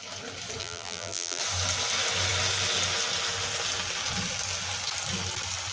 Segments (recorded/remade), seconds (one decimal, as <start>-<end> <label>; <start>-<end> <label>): 0.0-0.6 recorded; 0.6-1.4 remade; 1.4-5.7 recorded